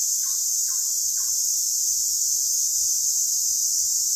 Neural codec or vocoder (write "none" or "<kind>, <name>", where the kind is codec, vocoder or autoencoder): none